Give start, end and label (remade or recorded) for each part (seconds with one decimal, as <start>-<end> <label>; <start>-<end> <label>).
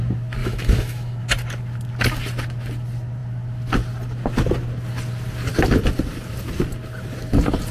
0.0-0.4 recorded; 0.4-1.2 remade; 1.2-7.7 recorded